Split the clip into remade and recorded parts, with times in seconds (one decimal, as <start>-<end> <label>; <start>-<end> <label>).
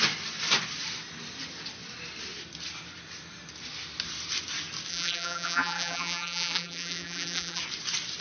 0.0-4.9 recorded; 4.9-7.6 remade; 7.6-8.2 recorded